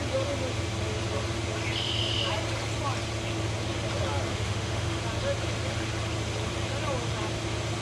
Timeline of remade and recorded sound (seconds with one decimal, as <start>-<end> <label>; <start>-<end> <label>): 0.0-4.3 recorded; 4.3-5.0 remade; 5.0-7.8 recorded

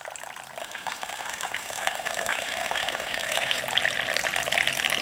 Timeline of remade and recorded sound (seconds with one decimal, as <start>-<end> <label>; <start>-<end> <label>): 0.0-0.6 recorded; 0.6-3.6 remade; 3.6-5.0 recorded